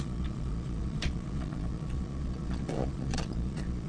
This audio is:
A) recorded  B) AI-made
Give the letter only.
B